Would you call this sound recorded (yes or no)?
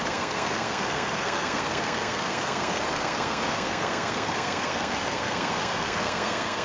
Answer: no